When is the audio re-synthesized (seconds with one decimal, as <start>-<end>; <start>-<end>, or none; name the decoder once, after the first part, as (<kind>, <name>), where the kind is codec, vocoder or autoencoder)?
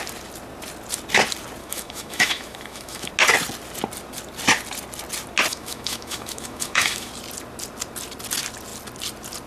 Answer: 1.6-3.1 (autoencoder, DAC-VAE); 5.5-7.1